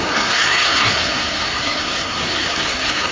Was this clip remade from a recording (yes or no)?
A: yes